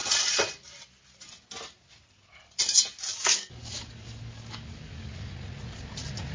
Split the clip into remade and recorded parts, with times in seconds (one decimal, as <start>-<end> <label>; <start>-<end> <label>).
0.0-3.1 recorded; 3.1-5.3 remade; 5.3-6.3 recorded